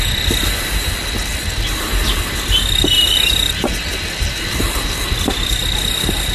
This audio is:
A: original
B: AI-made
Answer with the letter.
A